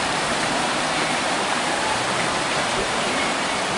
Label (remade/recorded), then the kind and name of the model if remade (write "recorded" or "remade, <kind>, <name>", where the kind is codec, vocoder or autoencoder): remade, vocoder, BigVGAN v2